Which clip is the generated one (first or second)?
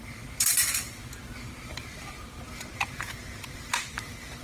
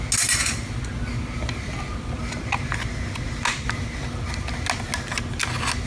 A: first